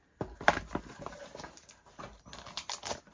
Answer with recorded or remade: recorded